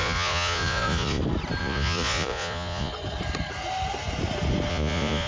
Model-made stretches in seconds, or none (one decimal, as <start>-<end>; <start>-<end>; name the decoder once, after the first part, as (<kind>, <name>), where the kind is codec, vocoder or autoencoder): 0.0-1.2 (vocoder, Vocos); 1.6-2.9; 4.7-5.3